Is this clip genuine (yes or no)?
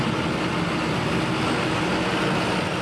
yes